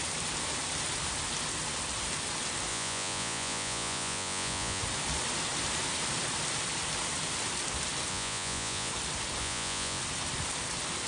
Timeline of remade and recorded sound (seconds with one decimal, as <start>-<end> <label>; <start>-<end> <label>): 0.0-2.7 recorded; 2.7-4.8 remade; 4.8-8.1 recorded; 8.1-8.9 remade; 8.9-9.4 recorded; 9.4-10.0 remade; 10.0-11.1 recorded